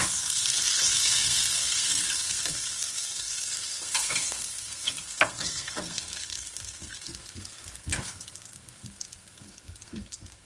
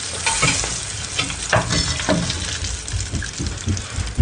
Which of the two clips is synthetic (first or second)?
first